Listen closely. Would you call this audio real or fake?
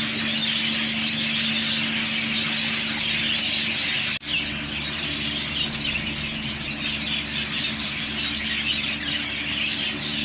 real